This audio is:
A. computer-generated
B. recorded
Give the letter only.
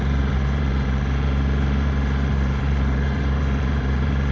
A